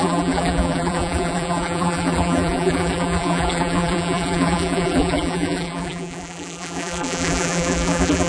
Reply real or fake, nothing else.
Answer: fake